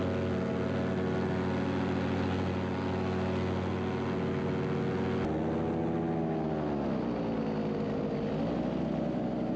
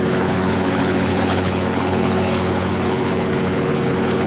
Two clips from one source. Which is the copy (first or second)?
second